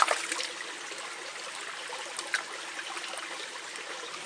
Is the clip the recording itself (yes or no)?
yes